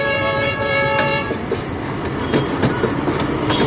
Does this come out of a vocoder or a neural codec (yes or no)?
yes